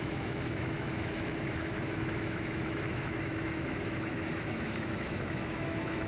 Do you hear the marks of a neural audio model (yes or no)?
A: yes